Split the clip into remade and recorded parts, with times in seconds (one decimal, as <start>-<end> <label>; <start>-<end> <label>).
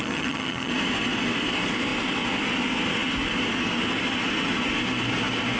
0.0-0.7 remade; 0.7-5.6 recorded